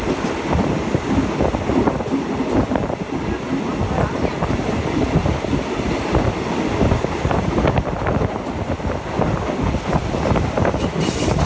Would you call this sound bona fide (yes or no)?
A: yes